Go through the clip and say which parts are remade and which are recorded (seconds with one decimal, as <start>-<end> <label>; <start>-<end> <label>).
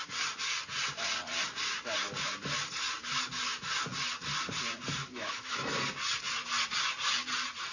0.0-5.0 recorded; 5.0-5.8 remade; 5.8-7.7 recorded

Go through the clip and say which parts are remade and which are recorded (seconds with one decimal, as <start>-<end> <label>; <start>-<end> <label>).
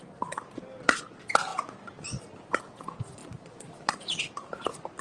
0.0-5.0 recorded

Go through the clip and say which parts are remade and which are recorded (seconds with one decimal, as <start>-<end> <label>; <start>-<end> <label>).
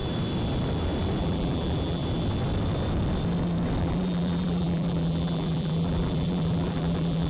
0.0-1.2 recorded; 1.2-2.0 remade; 2.0-3.8 recorded; 3.8-7.3 remade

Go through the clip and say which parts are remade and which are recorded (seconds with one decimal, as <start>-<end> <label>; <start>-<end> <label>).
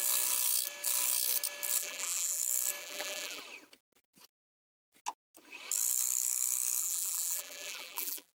0.0-1.8 recorded; 1.8-2.4 remade; 2.4-2.8 recorded; 2.8-3.4 remade; 3.4-6.8 recorded; 6.8-8.3 remade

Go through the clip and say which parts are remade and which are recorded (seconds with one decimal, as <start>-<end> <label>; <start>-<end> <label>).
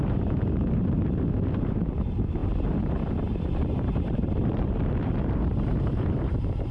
0.0-6.7 remade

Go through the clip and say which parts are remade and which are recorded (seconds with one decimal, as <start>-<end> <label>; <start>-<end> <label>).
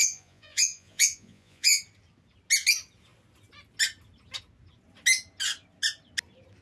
0.0-1.8 remade; 1.8-6.6 recorded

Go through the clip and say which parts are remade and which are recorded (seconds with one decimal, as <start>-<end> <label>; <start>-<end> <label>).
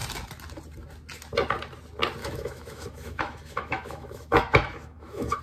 0.0-2.2 recorded; 2.2-5.4 remade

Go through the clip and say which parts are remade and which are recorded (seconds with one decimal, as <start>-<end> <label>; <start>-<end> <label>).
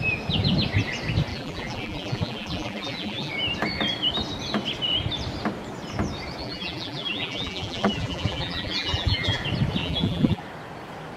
0.0-1.3 recorded; 1.3-3.3 remade; 3.3-6.4 recorded; 6.4-9.4 remade; 9.4-9.8 recorded; 9.8-10.4 remade; 10.4-11.2 recorded